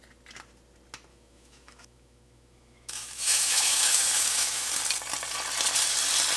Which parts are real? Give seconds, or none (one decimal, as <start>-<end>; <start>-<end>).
0.0-1.1; 4.7-6.4